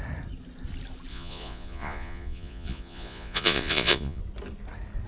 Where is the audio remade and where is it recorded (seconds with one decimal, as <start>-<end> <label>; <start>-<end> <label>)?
0.0-1.1 recorded; 1.1-4.2 remade; 4.2-5.1 recorded